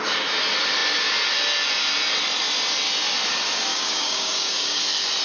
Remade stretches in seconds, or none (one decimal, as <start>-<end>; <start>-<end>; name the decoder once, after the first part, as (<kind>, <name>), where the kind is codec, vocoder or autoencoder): 3.7-4.8 (codec, DAC)